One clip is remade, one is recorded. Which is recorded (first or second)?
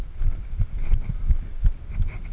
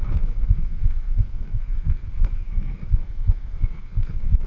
first